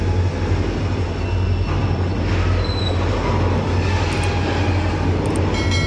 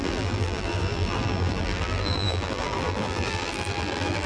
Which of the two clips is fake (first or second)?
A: second